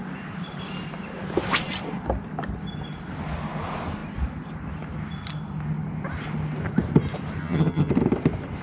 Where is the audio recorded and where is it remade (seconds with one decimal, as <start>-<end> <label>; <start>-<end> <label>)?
0.0-7.4 recorded; 7.4-7.9 remade; 7.9-8.6 recorded